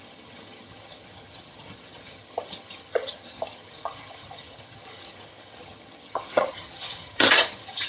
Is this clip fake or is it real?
fake